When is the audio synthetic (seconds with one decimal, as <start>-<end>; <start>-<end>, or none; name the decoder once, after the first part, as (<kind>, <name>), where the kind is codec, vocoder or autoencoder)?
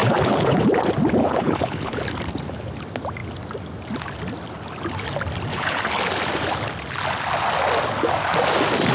0.0-0.7 (codec, HILCodec); 1.2-2.0; 5.5-6.0